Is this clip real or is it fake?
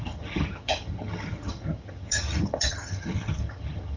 fake